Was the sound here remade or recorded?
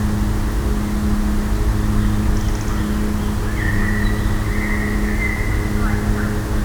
recorded